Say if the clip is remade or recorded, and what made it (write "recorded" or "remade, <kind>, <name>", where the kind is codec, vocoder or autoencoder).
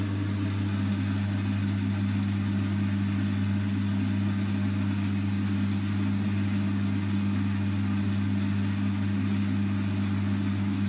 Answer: recorded